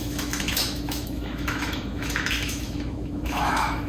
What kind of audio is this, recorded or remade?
remade